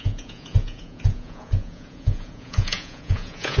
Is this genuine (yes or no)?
no